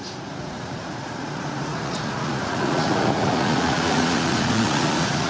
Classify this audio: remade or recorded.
remade